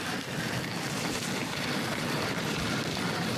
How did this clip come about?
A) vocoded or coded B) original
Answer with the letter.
B